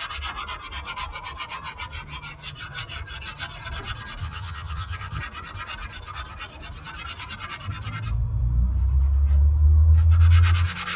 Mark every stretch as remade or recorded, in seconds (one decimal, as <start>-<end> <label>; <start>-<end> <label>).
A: 0.0-4.2 recorded; 4.2-5.2 remade; 5.2-11.0 recorded